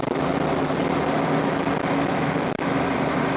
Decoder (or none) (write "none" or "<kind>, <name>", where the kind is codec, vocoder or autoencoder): none